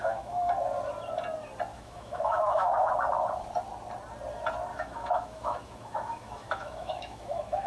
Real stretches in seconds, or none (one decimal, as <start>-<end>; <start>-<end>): 0.5-1.7; 2.9-4.7